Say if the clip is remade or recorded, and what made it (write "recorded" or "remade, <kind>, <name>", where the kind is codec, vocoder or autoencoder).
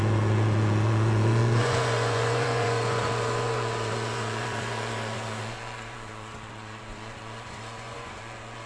remade, vocoder, Vocos